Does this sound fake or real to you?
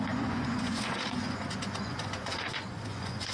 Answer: fake